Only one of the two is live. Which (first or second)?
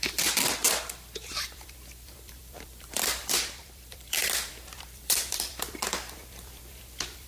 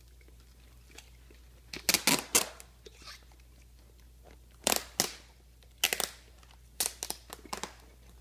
second